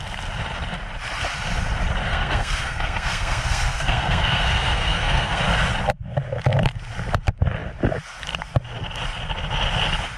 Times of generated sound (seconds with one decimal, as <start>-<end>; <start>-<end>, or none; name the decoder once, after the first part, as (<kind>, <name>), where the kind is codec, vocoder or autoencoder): 2.1-5.4 (codec, SNAC)